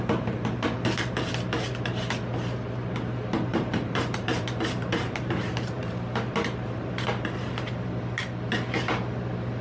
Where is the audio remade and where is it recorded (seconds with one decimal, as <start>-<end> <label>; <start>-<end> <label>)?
0.0-3.5 recorded; 3.5-7.5 remade; 7.5-9.6 recorded